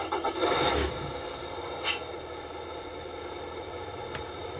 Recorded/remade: recorded